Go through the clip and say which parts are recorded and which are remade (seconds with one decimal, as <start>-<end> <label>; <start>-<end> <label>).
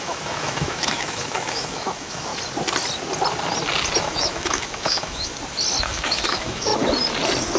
0.0-2.3 remade; 2.3-4.0 recorded; 4.0-5.3 remade; 5.3-5.8 recorded; 5.8-6.7 remade; 6.7-7.6 recorded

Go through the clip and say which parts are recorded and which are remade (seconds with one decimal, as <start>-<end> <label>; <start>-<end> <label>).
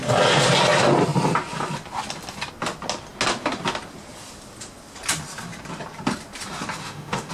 0.0-6.8 recorded; 6.8-7.3 remade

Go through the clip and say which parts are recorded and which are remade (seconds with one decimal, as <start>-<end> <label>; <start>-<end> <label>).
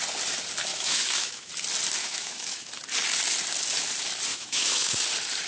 0.0-0.7 recorded; 0.7-1.5 remade; 1.5-2.0 recorded; 2.0-2.7 remade; 2.7-4.3 recorded; 4.3-5.0 remade; 5.0-5.5 recorded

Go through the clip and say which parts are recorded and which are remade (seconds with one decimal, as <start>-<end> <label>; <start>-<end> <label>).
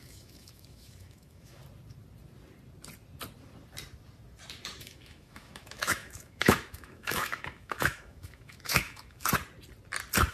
0.0-1.6 remade; 1.6-4.8 recorded; 4.8-9.3 remade; 9.3-10.3 recorded